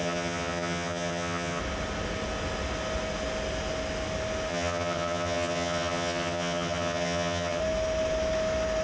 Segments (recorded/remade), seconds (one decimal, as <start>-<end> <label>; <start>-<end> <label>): 0.0-1.6 remade; 1.6-4.5 recorded; 4.5-7.6 remade; 7.6-8.8 recorded